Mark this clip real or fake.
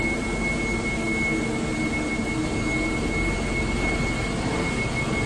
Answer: real